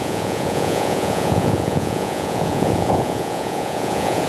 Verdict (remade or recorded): remade